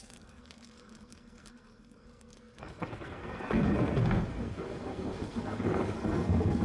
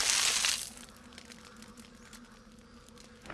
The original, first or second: second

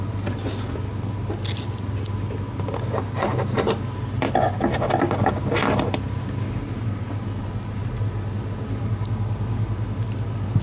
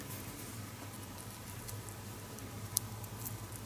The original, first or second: first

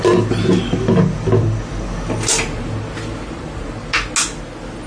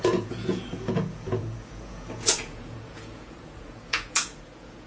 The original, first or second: first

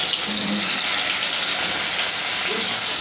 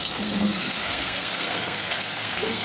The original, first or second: first